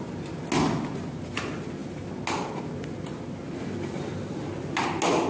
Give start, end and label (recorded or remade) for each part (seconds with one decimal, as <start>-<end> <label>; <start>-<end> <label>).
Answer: 0.0-5.3 recorded